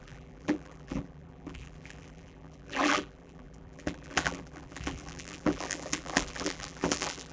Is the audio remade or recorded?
remade